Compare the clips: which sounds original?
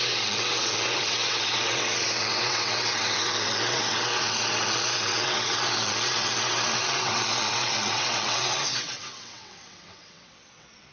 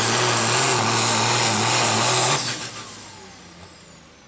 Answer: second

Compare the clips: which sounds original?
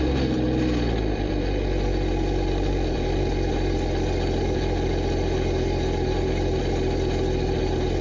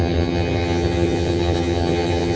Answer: first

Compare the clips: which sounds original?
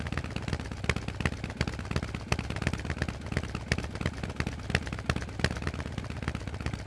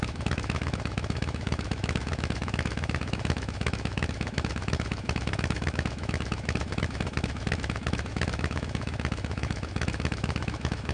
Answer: first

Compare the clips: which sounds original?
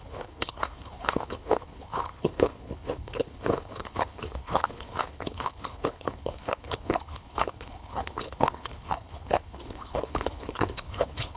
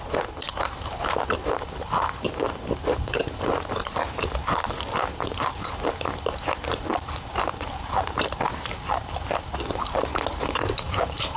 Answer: second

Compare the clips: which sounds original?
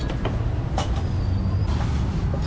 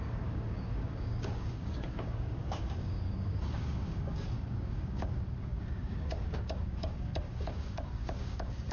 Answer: first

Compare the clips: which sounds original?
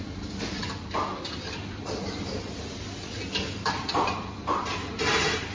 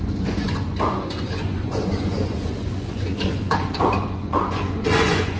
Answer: first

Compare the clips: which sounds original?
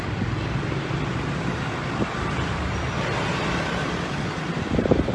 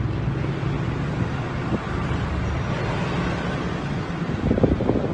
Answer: second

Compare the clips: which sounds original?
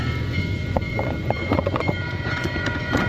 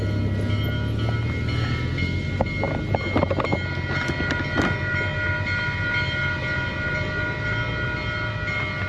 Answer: second